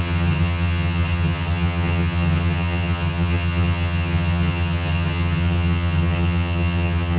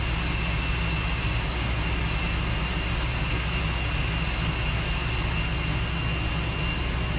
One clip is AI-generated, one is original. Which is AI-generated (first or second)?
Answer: first